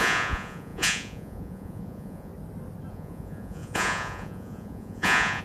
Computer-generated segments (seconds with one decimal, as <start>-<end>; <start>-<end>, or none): 0.0-2.3; 2.9-5.4